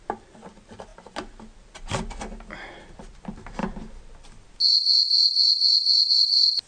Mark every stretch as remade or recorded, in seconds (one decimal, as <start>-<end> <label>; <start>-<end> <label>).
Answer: 0.0-6.7 recorded